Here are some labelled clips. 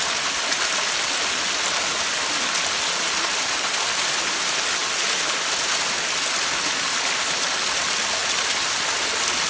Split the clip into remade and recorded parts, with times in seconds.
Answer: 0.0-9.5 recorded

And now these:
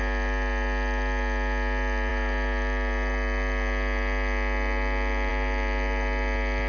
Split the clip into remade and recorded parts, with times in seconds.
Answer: 0.0-6.7 recorded